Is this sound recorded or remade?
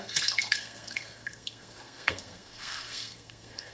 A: remade